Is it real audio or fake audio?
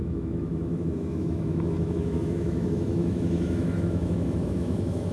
fake